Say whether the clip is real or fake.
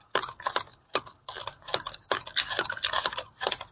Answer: real